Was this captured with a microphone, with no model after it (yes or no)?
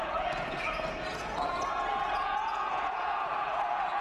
no